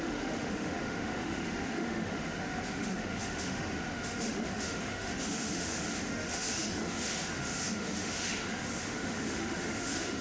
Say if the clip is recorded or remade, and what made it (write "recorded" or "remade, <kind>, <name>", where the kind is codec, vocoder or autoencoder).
remade, autoencoder, DAC-VAE